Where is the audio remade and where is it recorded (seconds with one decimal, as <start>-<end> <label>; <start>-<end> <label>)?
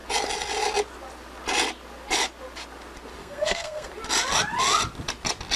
0.0-3.2 recorded; 3.2-3.9 remade; 3.9-5.6 recorded